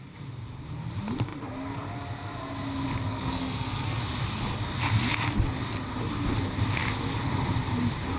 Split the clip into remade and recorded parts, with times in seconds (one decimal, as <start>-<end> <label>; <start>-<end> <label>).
0.0-3.1 recorded; 3.1-4.0 remade; 4.0-8.2 recorded